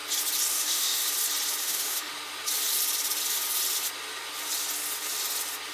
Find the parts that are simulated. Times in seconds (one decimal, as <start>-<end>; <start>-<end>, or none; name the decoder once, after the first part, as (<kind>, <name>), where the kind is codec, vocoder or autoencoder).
0.5-1.0 (autoencoder, DAC-VAE); 1.6-2.1